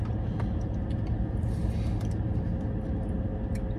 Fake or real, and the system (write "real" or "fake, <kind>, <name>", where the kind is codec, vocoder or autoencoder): real